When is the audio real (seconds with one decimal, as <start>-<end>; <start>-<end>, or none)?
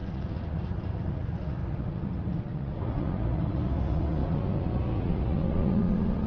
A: none